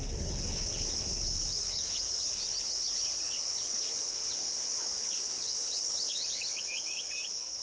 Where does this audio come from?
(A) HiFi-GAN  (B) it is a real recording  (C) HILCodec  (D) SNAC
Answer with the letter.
C